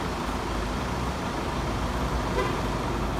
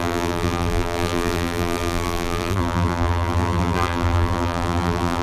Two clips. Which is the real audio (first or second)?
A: first